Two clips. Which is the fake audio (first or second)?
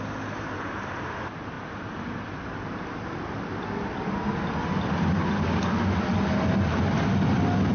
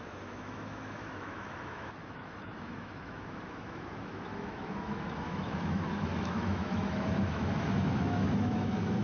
second